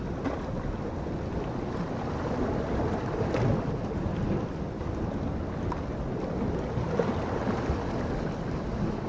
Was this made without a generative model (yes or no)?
yes